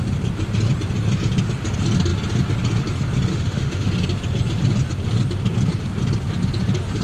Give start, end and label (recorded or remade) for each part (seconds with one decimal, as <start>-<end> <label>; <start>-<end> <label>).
0.0-3.3 recorded; 3.3-3.9 remade; 3.9-7.0 recorded